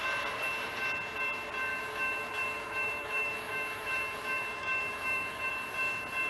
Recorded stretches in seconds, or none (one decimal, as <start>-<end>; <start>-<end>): 0.0-1.7; 5.5-6.3